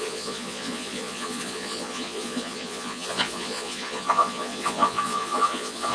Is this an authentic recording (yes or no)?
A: no